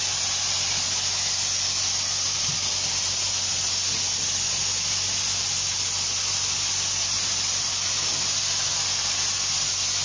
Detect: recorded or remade recorded